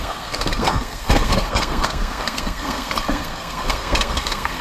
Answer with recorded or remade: remade